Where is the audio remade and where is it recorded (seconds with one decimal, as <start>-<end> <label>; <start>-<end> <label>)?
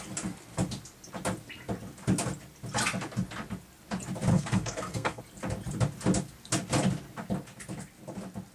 0.0-4.3 recorded; 4.3-5.2 remade; 5.2-8.5 recorded